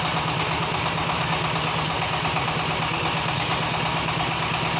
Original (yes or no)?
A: yes